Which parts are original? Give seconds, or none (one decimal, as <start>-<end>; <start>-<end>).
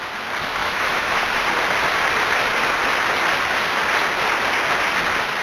0.0-0.6; 1.2-5.4